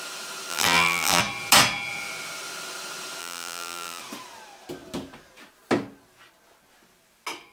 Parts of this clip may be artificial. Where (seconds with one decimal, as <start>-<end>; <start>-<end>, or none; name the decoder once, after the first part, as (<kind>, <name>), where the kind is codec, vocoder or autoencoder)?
0.5-1.2 (vocoder, BigVGAN v2); 3.2-4.0